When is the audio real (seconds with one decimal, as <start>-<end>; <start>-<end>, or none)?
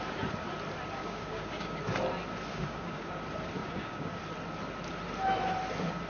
0.0-1.0; 1.8-2.5; 3.1-3.6; 4.2-6.1